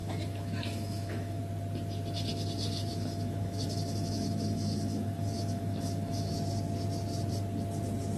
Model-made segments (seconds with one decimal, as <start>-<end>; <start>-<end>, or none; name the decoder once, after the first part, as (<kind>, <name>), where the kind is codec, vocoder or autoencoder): 0.0-1.4 (autoencoder, DAC-VAE); 2.9-6.3